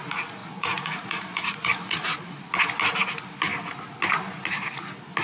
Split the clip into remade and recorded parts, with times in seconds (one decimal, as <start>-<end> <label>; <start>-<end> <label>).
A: 0.0-0.4 recorded; 0.4-2.5 remade; 2.5-5.2 recorded